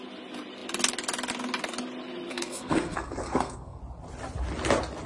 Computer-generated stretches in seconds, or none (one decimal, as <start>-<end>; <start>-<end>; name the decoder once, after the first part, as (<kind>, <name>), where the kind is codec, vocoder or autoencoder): 2.3-3.8 (codec, SNAC)